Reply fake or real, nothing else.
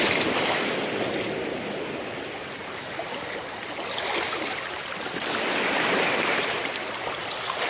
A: real